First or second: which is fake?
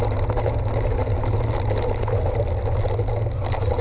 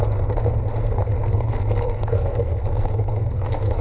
second